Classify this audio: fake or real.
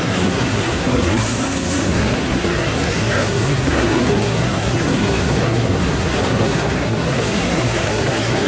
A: fake